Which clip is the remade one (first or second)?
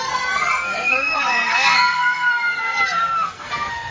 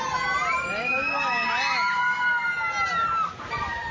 first